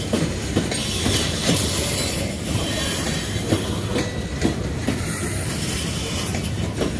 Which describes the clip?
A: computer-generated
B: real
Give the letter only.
B